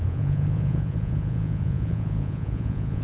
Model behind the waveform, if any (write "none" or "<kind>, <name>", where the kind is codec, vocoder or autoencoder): vocoder, Vocos